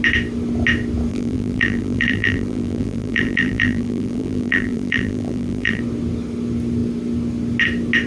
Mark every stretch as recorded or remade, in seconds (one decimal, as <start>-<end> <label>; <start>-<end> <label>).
0.0-1.1 recorded; 1.1-5.8 remade; 5.8-8.1 recorded